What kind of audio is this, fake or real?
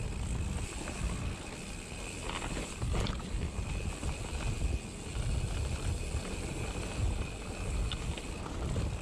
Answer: real